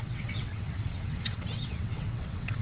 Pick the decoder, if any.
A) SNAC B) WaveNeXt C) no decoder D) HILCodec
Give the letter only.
B